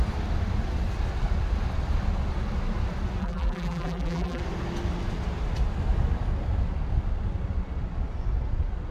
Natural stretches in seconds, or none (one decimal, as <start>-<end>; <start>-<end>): 0.0-3.2; 4.4-8.9

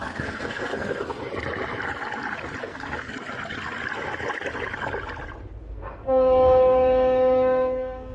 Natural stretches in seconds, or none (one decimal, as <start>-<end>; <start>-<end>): 1.3-2.6; 3.1-5.6